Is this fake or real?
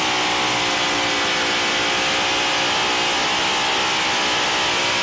real